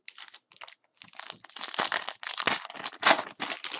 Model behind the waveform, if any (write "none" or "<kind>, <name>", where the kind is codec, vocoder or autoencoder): none